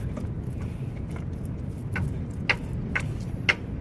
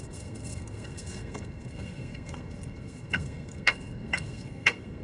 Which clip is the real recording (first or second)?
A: first